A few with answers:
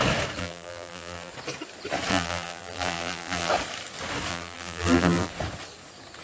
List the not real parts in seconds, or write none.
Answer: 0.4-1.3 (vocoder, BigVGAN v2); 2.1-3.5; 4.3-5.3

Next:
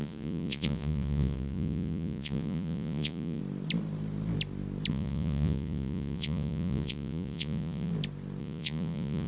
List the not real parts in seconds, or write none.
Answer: 0.0-3.4 (vocoder, Vocos); 4.9-7.9; 8.4-9.3

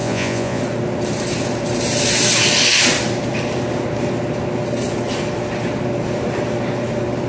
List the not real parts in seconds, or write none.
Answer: 0.0-0.6 (vocoder, Vocos)

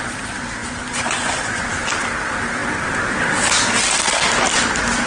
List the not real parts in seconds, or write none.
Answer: 0.6-1.7 (vocoder, Vocos)

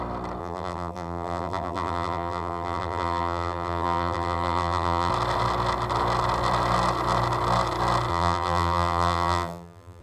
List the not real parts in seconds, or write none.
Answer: 0.4-5.1 (vocoder, BigVGAN v2); 8.1-10.0

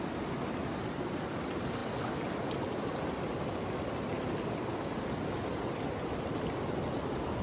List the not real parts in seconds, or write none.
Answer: none

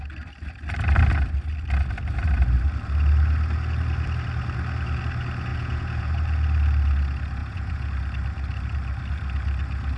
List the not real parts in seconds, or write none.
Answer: 5.5-6.1 (vocoder, Vocos); 7.4-7.9